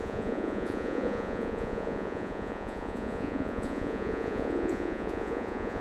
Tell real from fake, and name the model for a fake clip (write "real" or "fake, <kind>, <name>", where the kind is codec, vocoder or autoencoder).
fake, vocoder, Vocos